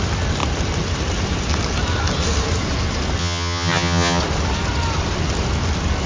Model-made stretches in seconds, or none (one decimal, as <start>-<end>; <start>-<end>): 3.2-4.2